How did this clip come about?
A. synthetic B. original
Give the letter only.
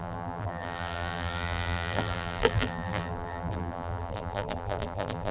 A